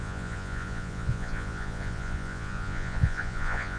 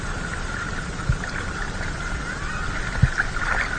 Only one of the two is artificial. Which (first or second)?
first